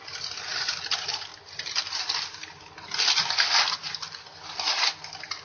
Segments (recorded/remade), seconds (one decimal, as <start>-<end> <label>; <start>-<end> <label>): 0.0-5.4 recorded